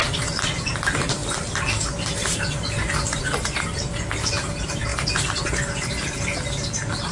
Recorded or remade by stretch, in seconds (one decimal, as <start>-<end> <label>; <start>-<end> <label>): 0.0-1.2 remade; 1.2-1.8 recorded; 1.8-4.9 remade; 4.9-7.1 recorded

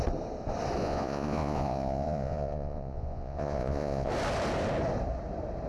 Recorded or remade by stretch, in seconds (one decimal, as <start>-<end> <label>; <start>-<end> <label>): 0.0-0.8 recorded; 0.8-4.1 remade; 4.1-5.7 recorded

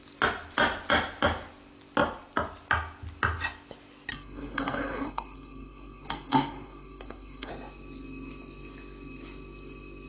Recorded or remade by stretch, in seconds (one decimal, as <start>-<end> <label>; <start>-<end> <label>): 0.0-4.1 recorded; 4.1-7.5 remade; 7.5-10.1 recorded

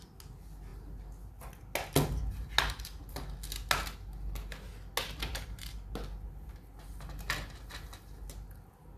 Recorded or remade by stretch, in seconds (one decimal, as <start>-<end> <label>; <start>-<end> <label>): 0.0-9.0 recorded